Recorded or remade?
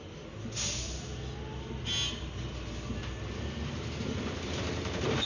recorded